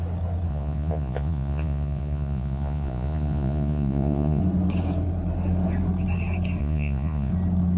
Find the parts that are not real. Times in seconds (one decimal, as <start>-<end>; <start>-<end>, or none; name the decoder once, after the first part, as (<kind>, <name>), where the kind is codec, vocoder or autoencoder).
0.5-4.4 (vocoder, Vocos); 6.6-7.3